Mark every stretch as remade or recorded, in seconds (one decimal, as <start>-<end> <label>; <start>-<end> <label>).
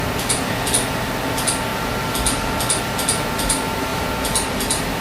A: 0.0-5.0 recorded